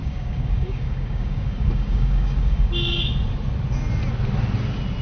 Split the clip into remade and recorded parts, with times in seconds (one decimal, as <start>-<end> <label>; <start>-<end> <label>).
0.0-2.7 remade; 2.7-5.0 recorded